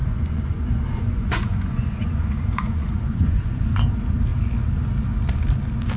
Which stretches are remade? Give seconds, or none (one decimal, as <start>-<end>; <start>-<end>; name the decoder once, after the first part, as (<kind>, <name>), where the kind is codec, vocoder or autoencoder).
0.0-3.6 (vocoder, Vocos)